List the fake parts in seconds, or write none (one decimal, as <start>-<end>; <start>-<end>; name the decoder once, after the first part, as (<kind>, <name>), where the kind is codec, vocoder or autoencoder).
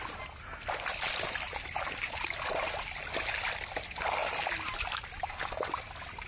none